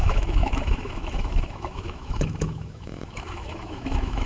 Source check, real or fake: fake